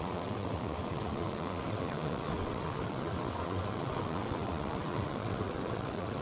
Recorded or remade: remade